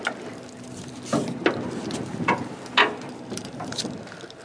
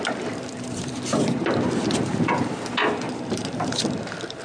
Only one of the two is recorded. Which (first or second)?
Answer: first